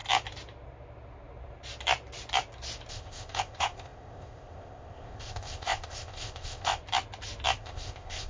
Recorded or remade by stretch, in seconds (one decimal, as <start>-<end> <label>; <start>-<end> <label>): 0.0-2.9 recorded; 2.9-6.8 remade; 6.8-7.6 recorded; 7.6-8.3 remade